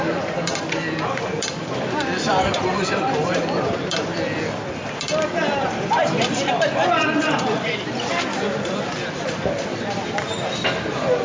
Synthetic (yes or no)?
yes